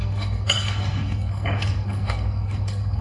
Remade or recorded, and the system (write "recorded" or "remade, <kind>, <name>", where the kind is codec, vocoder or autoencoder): remade, codec, SNAC